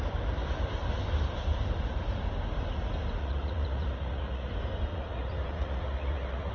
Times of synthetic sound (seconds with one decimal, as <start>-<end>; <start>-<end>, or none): 3.2-4.5; 4.9-6.5